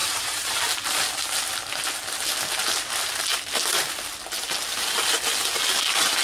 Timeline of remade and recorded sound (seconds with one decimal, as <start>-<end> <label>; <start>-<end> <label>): 0.0-0.6 remade; 0.6-6.2 recorded